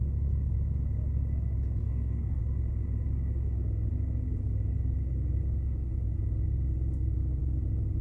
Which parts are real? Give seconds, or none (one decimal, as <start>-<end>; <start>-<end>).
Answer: 0.0-1.8; 2.4-8.0